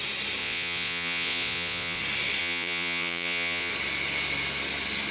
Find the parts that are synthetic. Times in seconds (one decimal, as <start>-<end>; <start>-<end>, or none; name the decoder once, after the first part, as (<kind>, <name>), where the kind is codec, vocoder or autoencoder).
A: 0.4-2.0 (vocoder, Vocos); 2.4-3.7